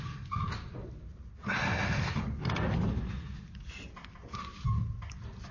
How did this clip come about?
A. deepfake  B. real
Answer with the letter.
B